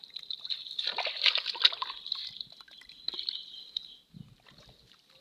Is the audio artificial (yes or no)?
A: no